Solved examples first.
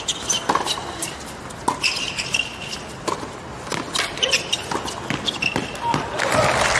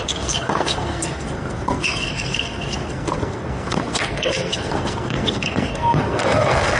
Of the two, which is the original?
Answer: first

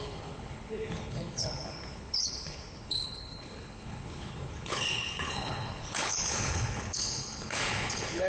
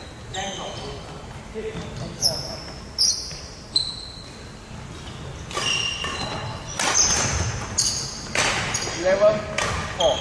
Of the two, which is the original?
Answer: second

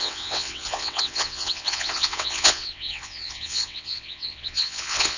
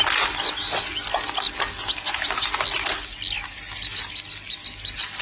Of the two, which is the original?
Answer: second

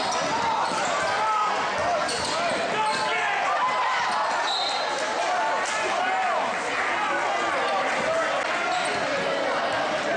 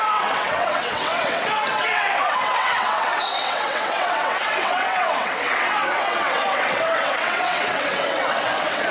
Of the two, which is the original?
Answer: first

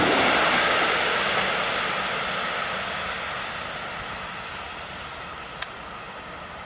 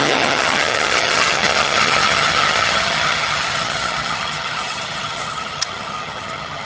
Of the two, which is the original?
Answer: first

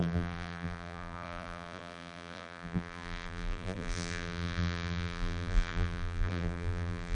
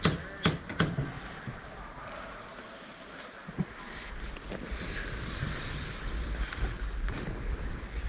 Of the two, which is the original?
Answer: second